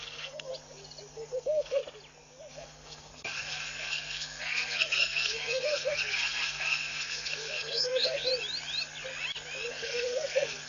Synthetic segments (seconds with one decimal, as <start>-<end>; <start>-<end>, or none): 0.0-0.5; 1.1-1.8; 2.5-8.3; 9.7-10.7